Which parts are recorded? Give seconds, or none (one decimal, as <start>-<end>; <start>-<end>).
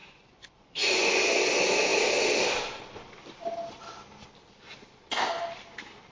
1.3-6.1